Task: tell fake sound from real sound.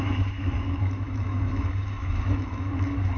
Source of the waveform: fake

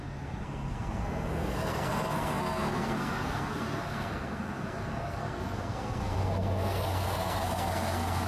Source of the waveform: fake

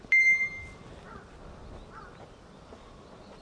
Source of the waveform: real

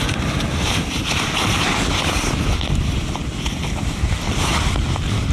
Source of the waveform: real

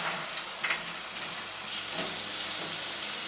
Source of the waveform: real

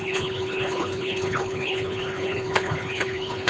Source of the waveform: fake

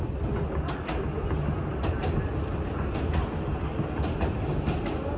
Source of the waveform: real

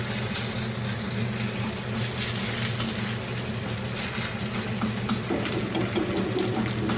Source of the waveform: real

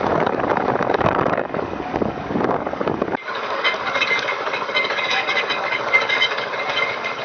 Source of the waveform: fake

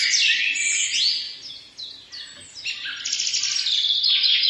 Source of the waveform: real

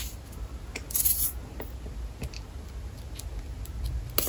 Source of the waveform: real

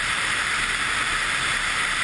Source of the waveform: real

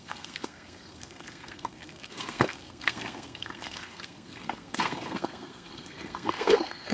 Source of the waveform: fake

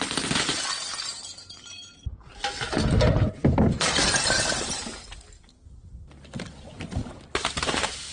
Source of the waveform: real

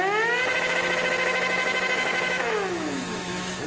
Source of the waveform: fake